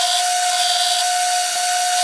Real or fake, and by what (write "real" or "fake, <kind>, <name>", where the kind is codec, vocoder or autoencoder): real